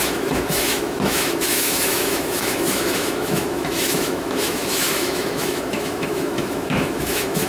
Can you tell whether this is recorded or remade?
remade